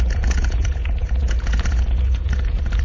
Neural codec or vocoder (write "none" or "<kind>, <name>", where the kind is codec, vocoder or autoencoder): vocoder, Vocos